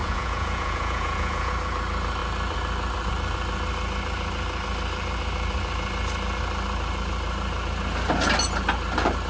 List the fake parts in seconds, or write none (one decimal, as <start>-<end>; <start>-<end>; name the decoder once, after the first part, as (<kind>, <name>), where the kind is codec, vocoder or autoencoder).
0.0-1.5 (vocoder, Vocos)